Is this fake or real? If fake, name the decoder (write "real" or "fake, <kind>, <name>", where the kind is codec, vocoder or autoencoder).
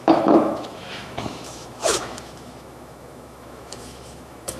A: fake, autoencoder, DAC-VAE